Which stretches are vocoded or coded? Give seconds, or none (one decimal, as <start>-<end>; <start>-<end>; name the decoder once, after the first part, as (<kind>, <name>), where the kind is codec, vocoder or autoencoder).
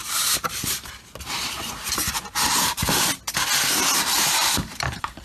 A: 0.0-3.1 (vocoder, BigVGAN v2); 3.9-5.2